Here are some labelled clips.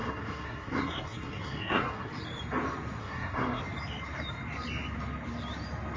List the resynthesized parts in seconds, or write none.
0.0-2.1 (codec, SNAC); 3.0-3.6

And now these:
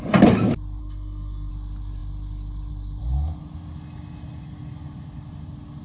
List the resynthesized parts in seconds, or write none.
0.8-1.5 (codec, SNAC)

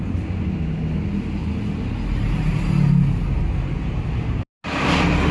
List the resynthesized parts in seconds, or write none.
none

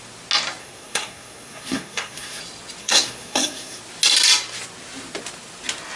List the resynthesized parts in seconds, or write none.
0.6-2.4 (codec, SNAC); 2.8-3.8

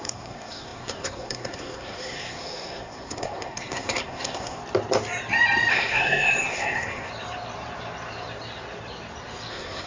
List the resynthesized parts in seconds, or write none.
0.0-4.6 (codec, SNAC); 5.7-7.1; 9.5-9.9

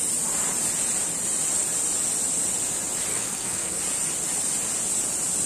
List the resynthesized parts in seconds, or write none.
3.1-3.8 (codec, SNAC)